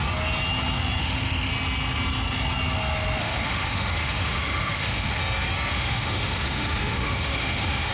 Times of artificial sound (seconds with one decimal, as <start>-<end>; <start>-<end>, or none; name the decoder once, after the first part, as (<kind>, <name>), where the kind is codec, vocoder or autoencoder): 1.0-1.5 (autoencoder, DAC-VAE); 3.2-5.2; 5.7-7.9